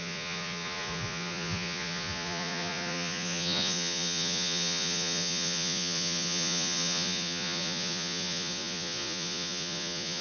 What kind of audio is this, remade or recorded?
remade